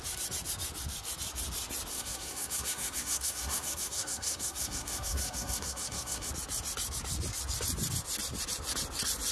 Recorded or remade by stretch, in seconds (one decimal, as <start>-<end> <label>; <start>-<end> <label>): 0.0-1.9 recorded; 1.9-6.3 remade; 6.3-9.3 recorded